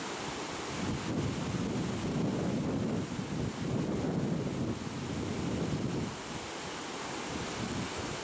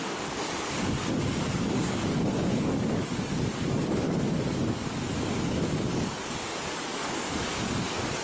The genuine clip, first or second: first